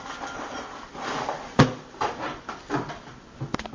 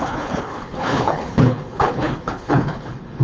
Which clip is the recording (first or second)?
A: first